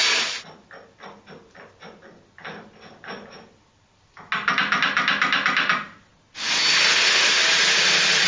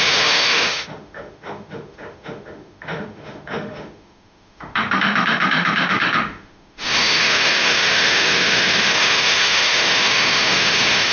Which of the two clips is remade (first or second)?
second